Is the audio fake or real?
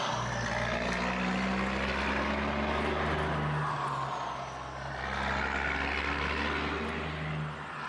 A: real